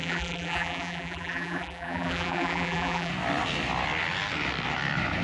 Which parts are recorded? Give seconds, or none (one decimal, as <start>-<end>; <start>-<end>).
3.1-5.2